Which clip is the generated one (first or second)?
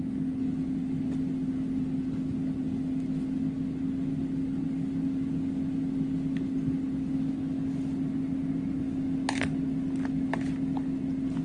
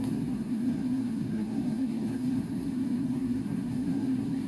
second